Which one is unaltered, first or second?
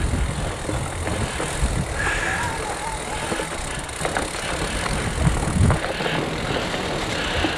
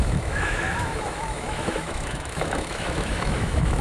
first